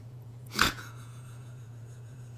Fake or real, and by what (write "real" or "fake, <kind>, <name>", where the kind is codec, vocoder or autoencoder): fake, vocoder, Vocos